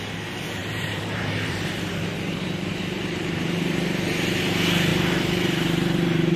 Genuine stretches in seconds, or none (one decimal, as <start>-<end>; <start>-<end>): 0.0-0.6; 4.4-4.9